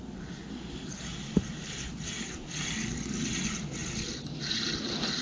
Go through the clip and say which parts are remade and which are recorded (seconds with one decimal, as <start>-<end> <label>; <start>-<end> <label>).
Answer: 0.0-5.2 recorded